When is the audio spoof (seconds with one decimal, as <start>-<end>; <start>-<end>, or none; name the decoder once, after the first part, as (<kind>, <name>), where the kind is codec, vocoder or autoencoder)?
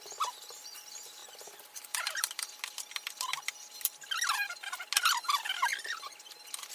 none